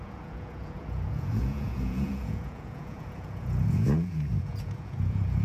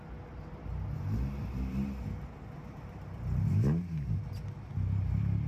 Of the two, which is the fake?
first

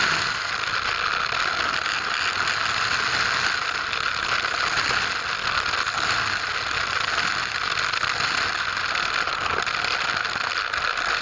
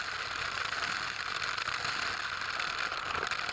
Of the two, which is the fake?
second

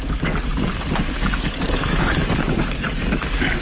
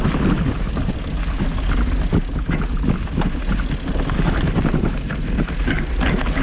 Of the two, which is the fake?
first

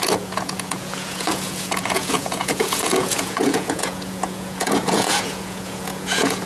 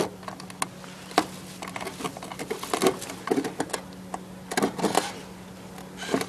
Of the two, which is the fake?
first